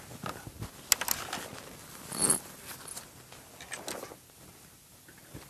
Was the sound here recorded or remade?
recorded